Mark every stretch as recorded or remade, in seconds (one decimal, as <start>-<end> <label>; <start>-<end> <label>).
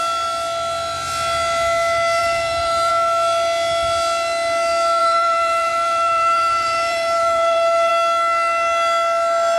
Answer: 0.0-2.2 recorded; 2.2-2.9 remade; 2.9-5.0 recorded; 5.0-7.9 remade; 7.9-9.6 recorded